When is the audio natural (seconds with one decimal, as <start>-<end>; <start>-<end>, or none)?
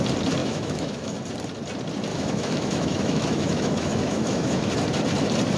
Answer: 0.0-0.4; 1.2-2.1; 4.7-5.6